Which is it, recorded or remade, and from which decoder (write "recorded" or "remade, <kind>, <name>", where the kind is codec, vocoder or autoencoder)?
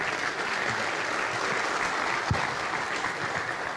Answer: recorded